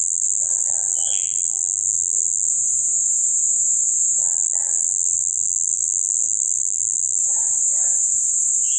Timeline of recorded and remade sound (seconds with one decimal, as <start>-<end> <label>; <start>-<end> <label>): 0.0-2.5 remade; 2.5-4.2 recorded; 4.2-7.2 remade; 7.2-8.8 recorded